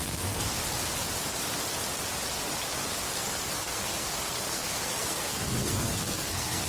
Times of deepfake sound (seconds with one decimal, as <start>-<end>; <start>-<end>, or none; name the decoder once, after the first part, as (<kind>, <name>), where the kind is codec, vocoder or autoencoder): 0.0-0.6 (codec, SNAC); 3.1-6.7